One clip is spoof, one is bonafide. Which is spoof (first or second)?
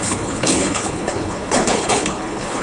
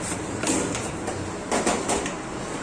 first